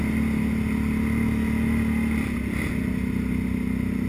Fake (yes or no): no